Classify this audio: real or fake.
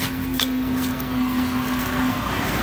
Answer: fake